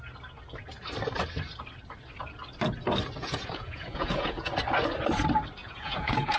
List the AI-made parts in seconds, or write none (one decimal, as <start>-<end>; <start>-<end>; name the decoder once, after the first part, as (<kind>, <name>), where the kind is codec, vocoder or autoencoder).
3.2-4.5 (vocoder, Vocos); 5.6-6.4